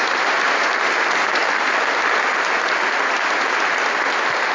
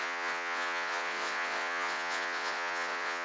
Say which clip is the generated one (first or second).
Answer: second